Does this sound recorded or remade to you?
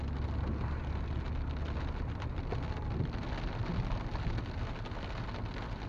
recorded